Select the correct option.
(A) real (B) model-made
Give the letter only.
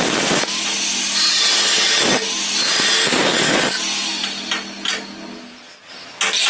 A